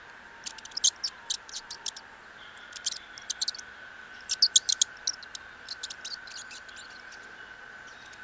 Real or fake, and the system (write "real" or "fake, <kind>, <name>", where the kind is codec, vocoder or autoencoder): real